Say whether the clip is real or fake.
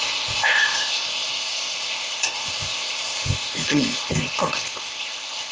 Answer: fake